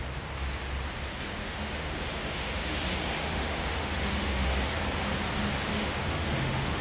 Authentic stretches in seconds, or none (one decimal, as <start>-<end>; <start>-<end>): 0.0-1.4; 2.8-3.2; 4.5-5.7